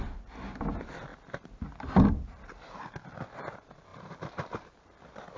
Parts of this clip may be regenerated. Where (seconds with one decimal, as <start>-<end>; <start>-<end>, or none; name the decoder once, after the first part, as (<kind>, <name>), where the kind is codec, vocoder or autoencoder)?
1.1-2.8 (vocoder, BigVGAN v2); 3.9-5.4